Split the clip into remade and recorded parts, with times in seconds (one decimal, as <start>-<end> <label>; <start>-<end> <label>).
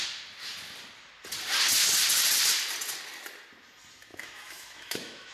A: 0.0-4.1 recorded; 4.1-5.3 remade